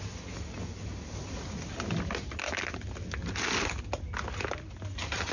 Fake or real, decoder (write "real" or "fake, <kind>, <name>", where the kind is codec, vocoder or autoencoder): real